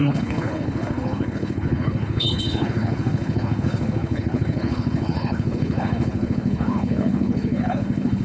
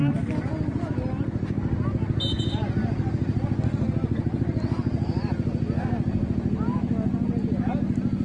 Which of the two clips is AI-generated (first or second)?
first